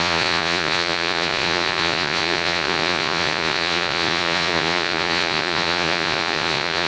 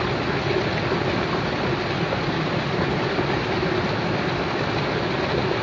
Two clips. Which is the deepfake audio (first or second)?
first